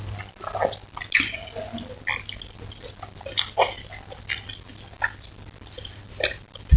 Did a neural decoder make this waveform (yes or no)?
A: no